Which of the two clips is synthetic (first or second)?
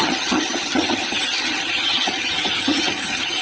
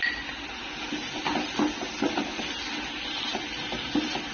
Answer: first